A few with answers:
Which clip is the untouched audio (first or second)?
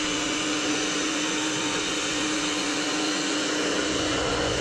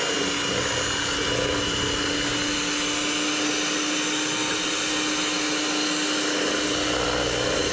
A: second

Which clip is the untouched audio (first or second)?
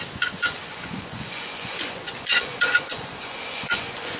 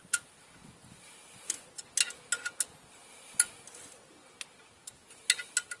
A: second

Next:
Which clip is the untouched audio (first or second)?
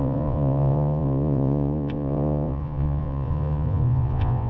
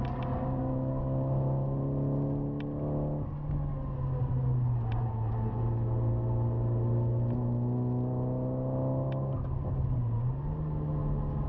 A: second